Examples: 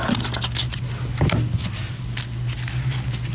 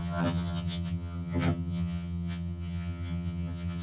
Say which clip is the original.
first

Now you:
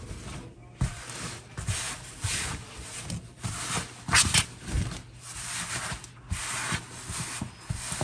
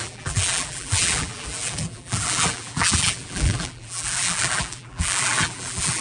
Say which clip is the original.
first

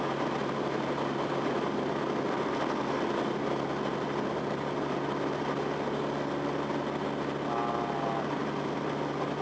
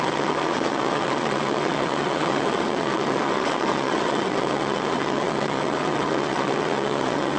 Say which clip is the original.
first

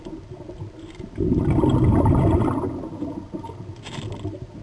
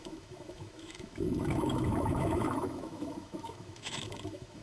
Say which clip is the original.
first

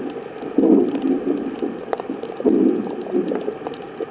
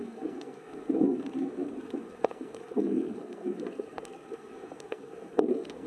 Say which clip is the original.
first